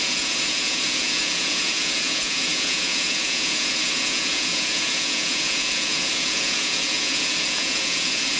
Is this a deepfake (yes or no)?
yes